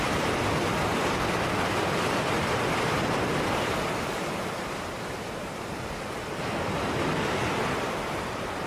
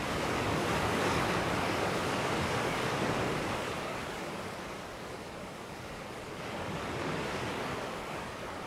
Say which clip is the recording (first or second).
first